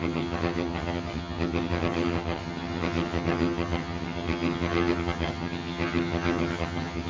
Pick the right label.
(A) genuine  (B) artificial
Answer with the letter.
B